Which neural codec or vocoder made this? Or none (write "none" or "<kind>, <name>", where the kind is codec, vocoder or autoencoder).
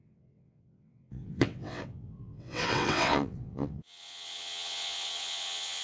vocoder, WaveNeXt